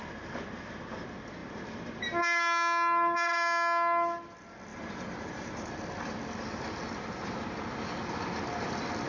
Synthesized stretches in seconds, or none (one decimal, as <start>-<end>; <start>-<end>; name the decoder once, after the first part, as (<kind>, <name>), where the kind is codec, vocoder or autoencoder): 4.7-5.7 (vocoder, BigVGAN v2)